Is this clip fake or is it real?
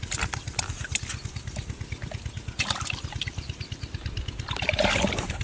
real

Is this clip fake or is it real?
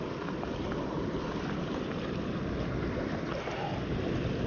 real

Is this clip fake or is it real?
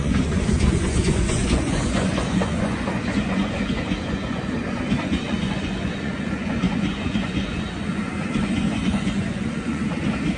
fake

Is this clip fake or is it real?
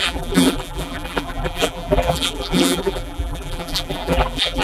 fake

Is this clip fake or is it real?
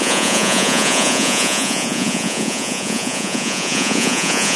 fake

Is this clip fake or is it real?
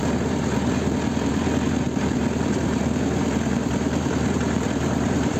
fake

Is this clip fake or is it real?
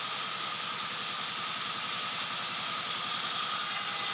real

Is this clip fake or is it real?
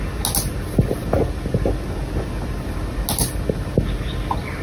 real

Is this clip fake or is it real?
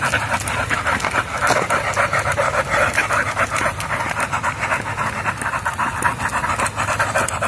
real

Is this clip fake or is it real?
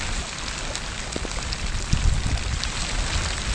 real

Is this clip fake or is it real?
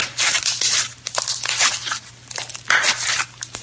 real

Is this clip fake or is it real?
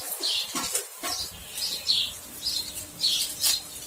fake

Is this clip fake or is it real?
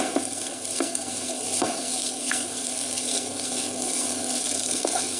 fake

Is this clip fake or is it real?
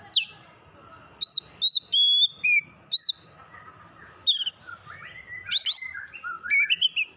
real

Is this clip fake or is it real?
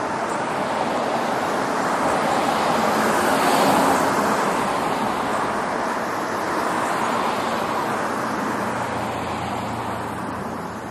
real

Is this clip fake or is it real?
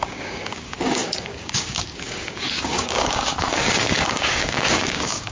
fake